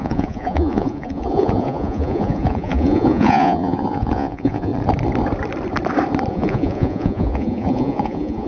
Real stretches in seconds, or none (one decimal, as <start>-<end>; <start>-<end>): 4.7-6.3